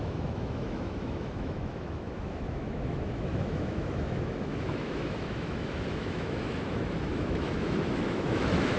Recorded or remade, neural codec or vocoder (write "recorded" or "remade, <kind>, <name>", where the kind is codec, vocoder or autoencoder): remade, autoencoder, DAC-VAE